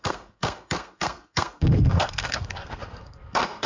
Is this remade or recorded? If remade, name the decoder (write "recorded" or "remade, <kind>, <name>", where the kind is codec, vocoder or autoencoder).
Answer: remade, codec, SNAC